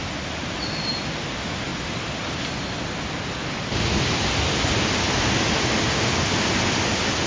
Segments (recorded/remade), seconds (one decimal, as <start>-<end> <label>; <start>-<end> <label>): 0.0-7.3 recorded